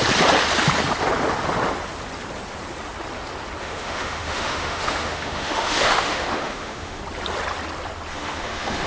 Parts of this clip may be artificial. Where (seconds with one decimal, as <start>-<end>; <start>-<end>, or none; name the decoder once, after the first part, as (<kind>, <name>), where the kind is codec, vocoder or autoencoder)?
3.6-7.0 (autoencoder, DAC-VAE); 8.1-8.9